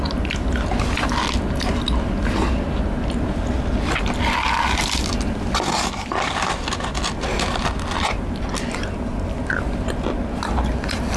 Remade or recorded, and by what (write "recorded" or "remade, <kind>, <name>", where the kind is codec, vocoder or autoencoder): recorded